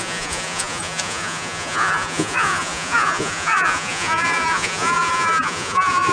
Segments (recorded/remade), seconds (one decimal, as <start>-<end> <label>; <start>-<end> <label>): 0.0-6.1 remade